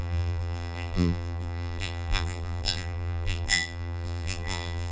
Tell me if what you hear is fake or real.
fake